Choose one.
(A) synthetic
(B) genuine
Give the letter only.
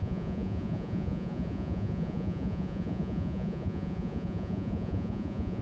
A